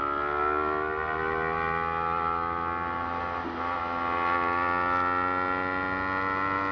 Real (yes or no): yes